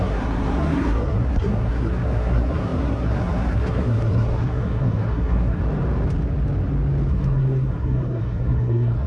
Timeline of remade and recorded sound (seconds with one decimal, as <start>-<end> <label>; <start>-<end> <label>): 0.0-5.6 remade; 5.6-7.1 recorded; 7.1-9.1 remade